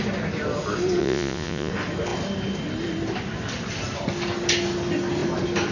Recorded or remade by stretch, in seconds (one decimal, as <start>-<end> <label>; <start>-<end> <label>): 0.0-1.0 recorded; 1.0-1.7 remade; 1.7-5.7 recorded